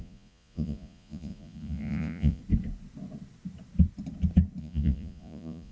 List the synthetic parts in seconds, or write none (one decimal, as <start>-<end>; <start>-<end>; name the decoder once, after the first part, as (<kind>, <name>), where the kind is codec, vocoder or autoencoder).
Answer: 0.0-2.4 (vocoder, Vocos); 4.6-5.7